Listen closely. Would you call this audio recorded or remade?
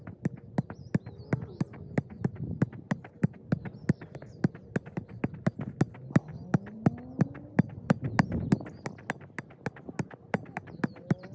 recorded